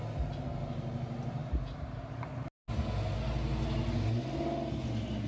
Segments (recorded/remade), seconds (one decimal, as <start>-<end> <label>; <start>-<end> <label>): 0.0-5.3 recorded